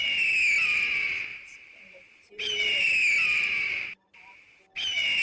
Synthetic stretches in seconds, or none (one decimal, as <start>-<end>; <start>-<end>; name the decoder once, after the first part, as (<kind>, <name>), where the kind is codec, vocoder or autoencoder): 1.3-2.9 (vocoder, BigVGAN v2); 3.4-4.1